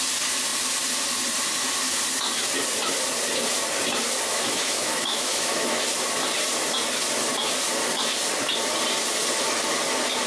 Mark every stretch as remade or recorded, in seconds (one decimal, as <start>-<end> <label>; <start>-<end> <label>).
0.0-4.3 recorded; 4.3-5.8 remade; 5.8-10.3 recorded